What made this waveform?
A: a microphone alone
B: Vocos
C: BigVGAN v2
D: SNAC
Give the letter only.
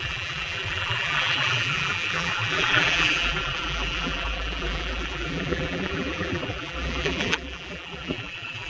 C